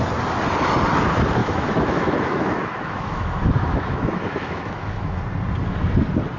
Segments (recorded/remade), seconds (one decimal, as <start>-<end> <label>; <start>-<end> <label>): 0.0-1.4 recorded; 1.4-5.2 remade; 5.2-6.4 recorded